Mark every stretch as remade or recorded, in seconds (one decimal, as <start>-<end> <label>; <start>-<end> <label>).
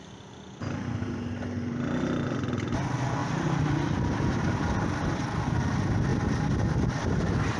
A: 0.0-7.6 recorded